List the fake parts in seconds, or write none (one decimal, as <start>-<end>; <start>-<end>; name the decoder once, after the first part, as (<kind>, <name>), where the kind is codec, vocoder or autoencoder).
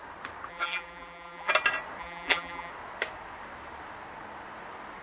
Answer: 0.5-1.5 (vocoder, BigVGAN v2); 2.0-2.7